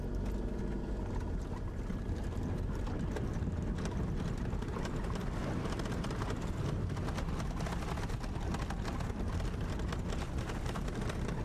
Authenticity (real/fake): real